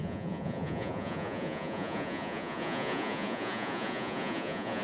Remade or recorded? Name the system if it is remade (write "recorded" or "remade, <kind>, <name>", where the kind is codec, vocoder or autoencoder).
remade, vocoder, Vocos